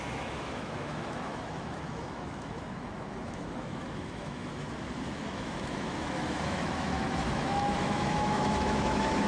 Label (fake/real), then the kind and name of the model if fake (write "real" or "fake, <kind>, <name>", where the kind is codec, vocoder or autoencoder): fake, autoencoder, DAC-VAE